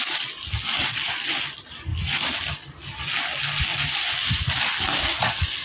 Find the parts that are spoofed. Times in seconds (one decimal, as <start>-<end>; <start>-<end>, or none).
none